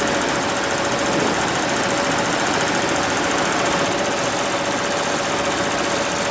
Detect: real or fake real